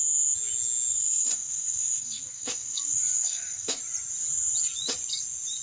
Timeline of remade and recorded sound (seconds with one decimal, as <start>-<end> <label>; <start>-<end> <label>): 0.0-0.9 recorded; 0.9-3.8 remade; 3.8-5.6 recorded